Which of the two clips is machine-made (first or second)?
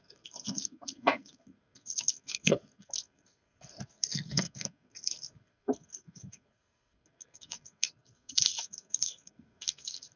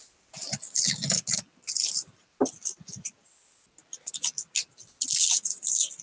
first